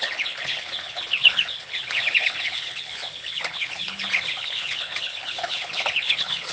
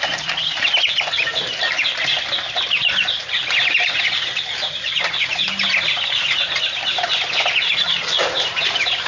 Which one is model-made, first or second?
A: first